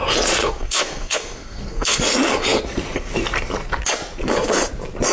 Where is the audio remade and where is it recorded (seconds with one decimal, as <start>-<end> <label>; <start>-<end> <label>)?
0.0-0.4 recorded; 0.4-2.0 remade; 2.0-5.1 recorded